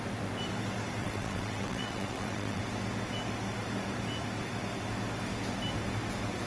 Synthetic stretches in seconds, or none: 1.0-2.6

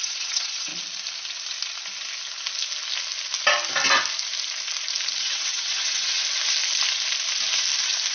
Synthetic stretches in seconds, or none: 0.0-0.7; 5.2-6.2

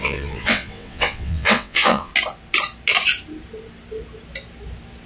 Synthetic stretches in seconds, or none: 0.0-2.1